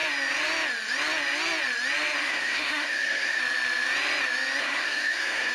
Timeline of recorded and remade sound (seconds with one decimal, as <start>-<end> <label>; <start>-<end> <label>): 0.0-2.2 recorded; 2.2-3.4 remade; 3.4-4.6 recorded; 4.6-5.5 remade